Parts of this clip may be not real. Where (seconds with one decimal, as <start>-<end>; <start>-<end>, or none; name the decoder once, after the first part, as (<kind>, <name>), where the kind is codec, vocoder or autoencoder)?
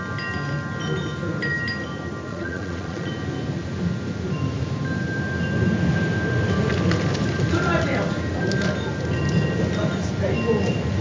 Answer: 2.3-3.1 (vocoder, Vocos)